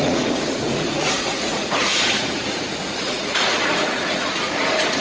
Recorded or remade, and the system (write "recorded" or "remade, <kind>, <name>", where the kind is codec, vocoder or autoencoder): remade, vocoder, Vocos